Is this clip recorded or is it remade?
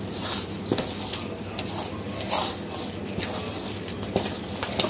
recorded